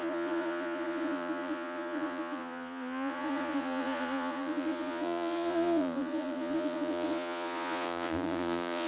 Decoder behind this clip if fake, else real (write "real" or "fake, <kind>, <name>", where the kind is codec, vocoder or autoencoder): fake, vocoder, Vocos